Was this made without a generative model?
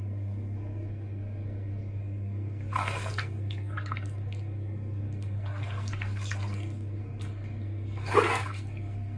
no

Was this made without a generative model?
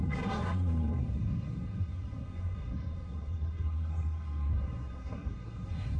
no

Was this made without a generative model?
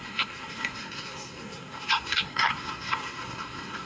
no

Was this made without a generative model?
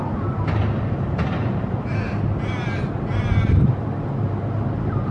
yes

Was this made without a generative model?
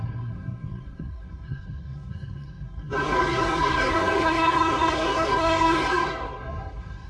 no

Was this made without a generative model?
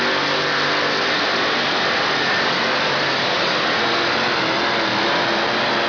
yes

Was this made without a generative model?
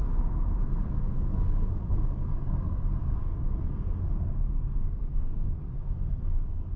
no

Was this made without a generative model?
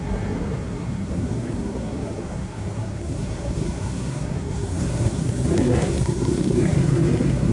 no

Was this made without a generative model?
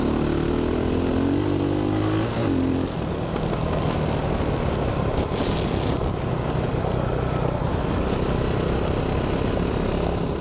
yes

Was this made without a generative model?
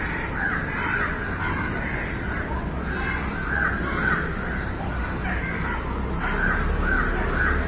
yes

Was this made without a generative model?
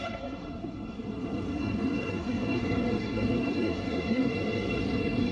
no